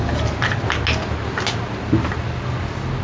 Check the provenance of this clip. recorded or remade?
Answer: recorded